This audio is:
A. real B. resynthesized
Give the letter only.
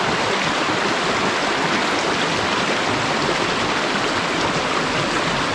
A